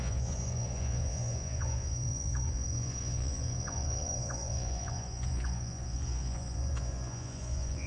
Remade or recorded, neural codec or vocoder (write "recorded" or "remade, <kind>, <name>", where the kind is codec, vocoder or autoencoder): remade, vocoder, Vocos